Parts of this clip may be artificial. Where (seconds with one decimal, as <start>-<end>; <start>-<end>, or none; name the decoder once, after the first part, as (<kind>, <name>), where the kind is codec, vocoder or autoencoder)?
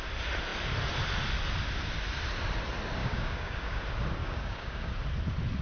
3.0-3.8 (codec, DAC); 4.2-4.9